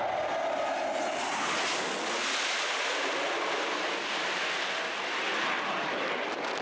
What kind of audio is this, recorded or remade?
recorded